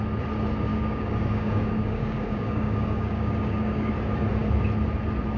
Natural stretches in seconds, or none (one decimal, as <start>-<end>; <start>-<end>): 0.0-0.7; 3.9-5.4